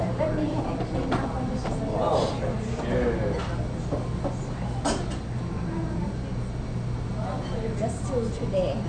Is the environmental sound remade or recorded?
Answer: recorded